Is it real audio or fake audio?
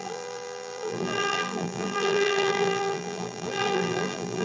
fake